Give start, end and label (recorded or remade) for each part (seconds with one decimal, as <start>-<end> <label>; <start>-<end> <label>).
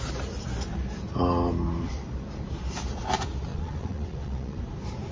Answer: 0.0-3.5 recorded; 3.5-4.6 remade; 4.6-5.1 recorded